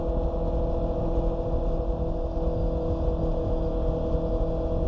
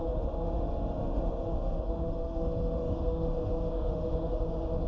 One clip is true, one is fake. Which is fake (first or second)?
second